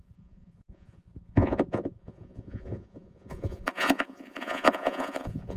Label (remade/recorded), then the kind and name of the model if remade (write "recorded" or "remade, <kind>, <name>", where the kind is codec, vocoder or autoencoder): remade, vocoder, Vocos